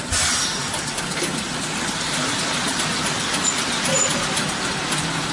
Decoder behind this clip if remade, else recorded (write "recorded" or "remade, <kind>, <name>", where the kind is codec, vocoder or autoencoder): recorded